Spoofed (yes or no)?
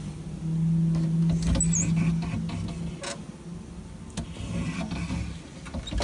no